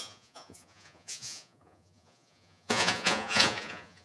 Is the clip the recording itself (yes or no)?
no